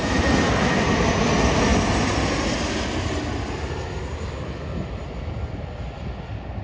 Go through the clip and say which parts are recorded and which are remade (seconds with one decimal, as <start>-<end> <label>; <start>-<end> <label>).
0.0-6.6 recorded